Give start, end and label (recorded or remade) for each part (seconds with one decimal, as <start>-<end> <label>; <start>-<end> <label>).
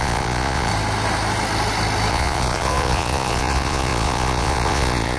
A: 0.0-0.7 remade; 0.7-2.1 recorded; 2.1-5.2 remade